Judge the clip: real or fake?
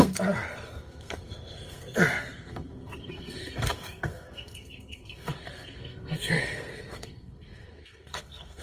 fake